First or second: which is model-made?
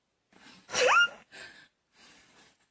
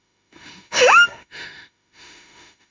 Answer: second